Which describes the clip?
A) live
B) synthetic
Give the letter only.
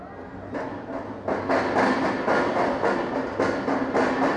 A